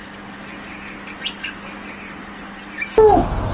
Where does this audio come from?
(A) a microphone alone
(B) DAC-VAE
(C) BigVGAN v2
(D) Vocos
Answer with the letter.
A